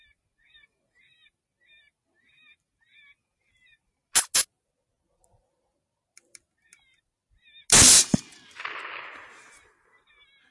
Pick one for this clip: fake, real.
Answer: real